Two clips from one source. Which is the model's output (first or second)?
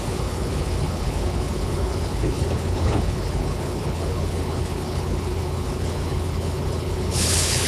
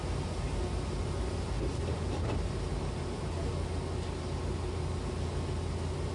first